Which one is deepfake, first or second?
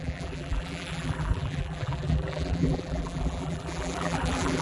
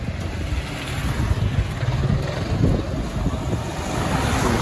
first